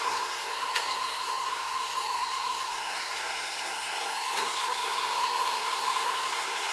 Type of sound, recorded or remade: remade